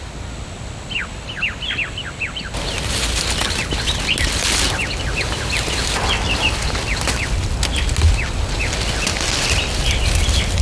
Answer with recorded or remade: recorded